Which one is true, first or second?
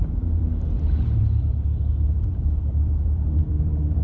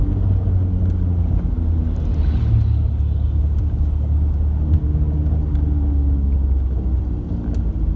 second